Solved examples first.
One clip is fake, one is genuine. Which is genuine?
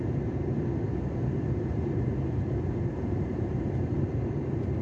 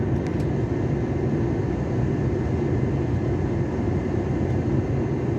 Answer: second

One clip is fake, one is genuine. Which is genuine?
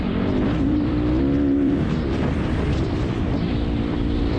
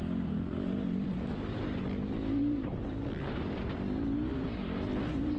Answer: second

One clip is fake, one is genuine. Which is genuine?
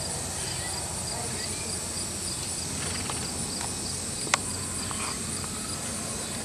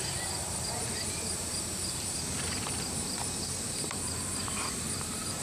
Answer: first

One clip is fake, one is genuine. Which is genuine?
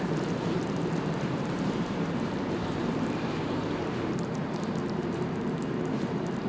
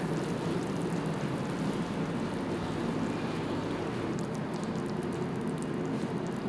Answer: second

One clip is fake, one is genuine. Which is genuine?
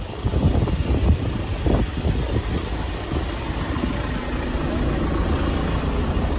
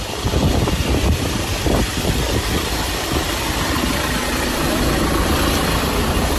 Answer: first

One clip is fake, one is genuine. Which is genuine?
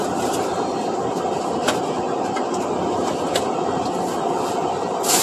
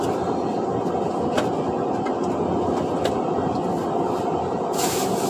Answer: second